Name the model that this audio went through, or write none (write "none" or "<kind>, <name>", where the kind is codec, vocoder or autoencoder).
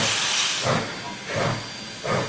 none